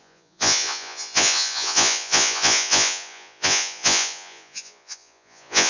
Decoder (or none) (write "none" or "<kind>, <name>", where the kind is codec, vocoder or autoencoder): vocoder, Vocos